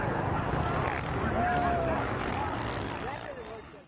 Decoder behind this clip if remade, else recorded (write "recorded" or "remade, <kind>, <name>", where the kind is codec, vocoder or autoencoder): recorded